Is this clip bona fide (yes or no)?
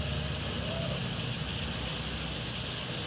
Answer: yes